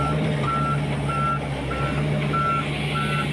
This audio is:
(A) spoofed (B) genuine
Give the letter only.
B